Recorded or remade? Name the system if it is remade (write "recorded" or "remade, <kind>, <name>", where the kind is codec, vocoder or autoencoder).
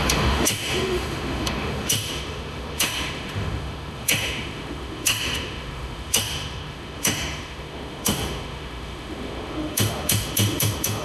remade, autoencoder, DAC-VAE